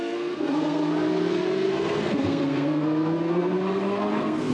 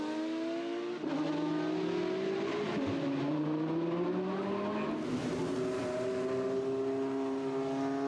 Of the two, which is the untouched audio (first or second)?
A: second